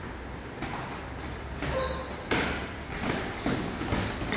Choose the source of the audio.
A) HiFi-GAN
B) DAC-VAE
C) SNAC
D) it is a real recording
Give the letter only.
D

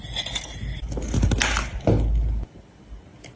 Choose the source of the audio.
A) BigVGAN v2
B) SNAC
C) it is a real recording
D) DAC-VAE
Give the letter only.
C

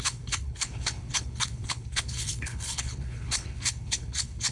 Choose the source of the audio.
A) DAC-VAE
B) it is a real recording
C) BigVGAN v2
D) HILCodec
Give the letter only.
D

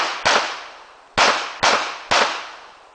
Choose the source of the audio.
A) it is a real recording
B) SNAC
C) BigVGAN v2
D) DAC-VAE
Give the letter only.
A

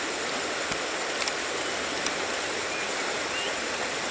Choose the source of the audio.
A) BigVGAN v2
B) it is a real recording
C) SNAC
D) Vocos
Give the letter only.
B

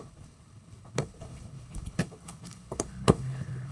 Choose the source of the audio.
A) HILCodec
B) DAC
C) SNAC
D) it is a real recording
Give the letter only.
A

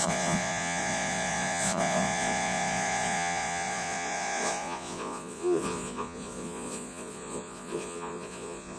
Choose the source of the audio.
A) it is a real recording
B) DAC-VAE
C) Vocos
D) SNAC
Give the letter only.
C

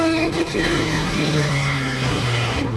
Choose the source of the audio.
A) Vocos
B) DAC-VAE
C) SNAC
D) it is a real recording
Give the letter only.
C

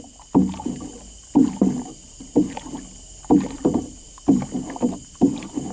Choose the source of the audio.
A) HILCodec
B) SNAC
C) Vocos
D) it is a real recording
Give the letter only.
D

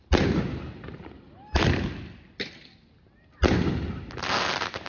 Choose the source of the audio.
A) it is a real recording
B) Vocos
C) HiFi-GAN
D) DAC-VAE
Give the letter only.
A